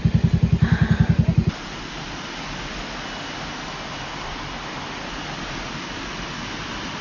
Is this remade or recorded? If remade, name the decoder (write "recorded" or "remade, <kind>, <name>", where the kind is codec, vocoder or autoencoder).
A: recorded